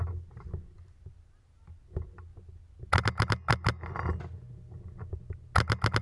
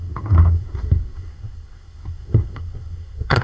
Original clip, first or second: first